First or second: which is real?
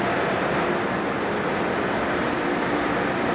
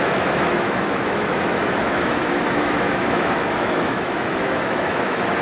first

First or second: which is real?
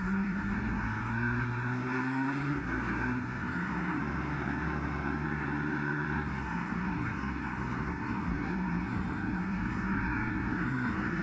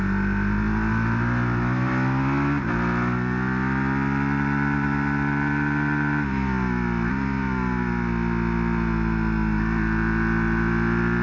second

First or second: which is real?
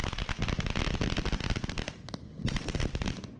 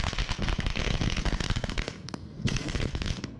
first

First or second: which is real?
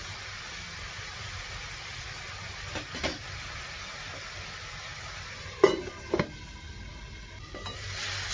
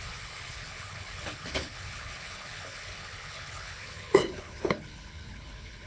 first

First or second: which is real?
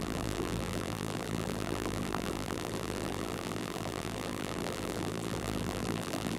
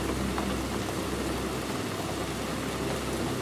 second